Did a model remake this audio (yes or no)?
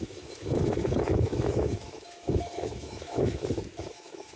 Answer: yes